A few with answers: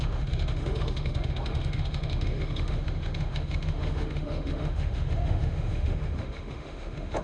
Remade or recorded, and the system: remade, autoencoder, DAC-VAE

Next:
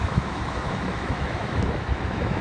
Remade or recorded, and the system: remade, autoencoder, DAC-VAE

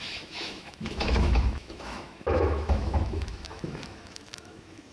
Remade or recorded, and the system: remade, autoencoder, DAC-VAE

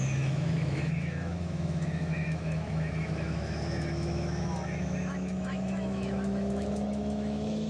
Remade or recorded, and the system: remade, autoencoder, DAC-VAE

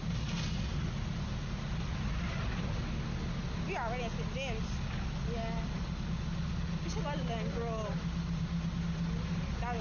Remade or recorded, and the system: recorded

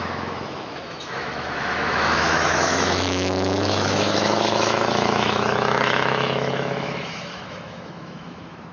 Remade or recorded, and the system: remade, autoencoder, DAC-VAE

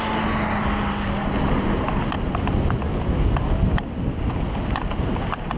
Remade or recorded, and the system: recorded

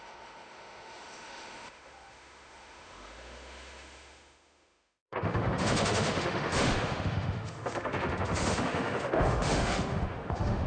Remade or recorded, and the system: remade, autoencoder, DAC-VAE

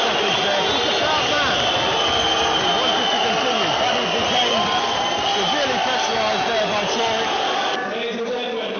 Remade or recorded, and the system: recorded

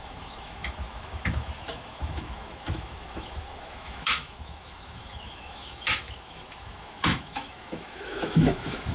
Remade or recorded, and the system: remade, autoencoder, DAC-VAE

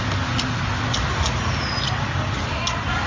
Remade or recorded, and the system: recorded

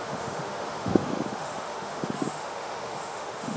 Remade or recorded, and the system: remade, autoencoder, DAC-VAE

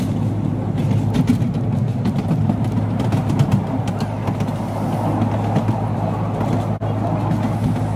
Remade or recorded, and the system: recorded